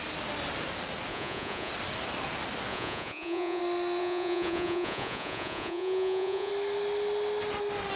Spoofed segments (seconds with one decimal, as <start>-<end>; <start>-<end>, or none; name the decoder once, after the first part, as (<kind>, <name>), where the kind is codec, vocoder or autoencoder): 1.1-1.7 (vocoder, Vocos); 2.7-3.6; 4.0-6.5